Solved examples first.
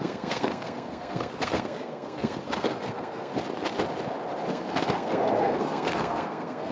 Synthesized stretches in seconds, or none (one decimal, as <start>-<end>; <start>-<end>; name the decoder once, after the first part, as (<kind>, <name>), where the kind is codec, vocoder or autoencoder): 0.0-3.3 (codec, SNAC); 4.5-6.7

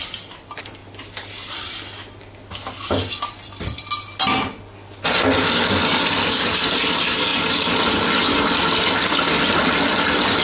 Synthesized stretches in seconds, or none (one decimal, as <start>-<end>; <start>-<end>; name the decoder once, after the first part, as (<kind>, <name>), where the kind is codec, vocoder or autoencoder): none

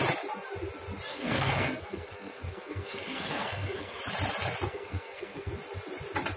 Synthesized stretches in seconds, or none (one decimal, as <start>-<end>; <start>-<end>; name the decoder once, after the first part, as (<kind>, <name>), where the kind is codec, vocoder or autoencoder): 1.1-4.0 (codec, SNAC); 4.7-5.5

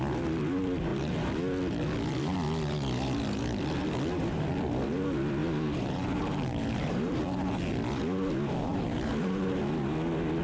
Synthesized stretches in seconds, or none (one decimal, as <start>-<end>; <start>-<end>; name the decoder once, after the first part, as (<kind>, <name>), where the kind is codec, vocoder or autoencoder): 5.4-7.2 (vocoder, BigVGAN v2); 8.7-9.6